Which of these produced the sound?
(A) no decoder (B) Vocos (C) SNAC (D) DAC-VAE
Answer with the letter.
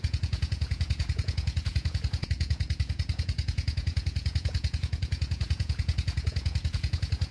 B